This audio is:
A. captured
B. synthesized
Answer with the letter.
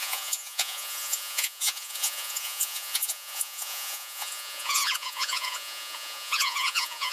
B